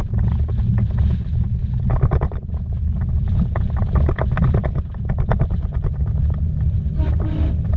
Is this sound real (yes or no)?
yes